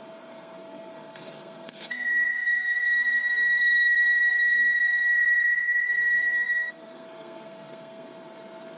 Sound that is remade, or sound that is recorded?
remade